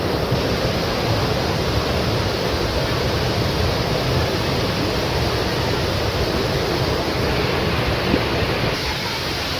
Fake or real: real